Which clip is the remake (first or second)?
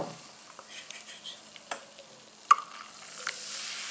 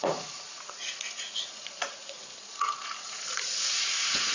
second